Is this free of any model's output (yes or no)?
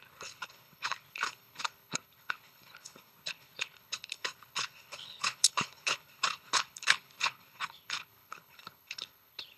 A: no